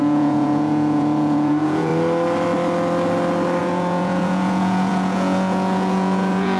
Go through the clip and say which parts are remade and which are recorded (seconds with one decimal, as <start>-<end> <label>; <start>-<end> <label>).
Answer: 0.0-1.9 remade; 1.9-3.6 recorded; 3.6-6.6 remade